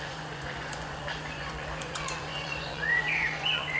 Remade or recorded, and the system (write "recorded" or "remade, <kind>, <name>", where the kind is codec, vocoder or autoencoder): remade, vocoder, Vocos